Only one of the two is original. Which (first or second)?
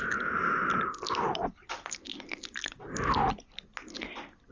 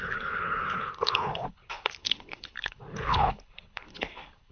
first